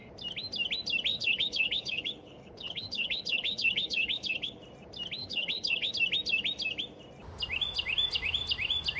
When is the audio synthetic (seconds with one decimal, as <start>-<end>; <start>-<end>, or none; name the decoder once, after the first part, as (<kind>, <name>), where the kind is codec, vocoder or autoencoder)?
1.1-4.6 (codec, HILCodec); 5.2-5.9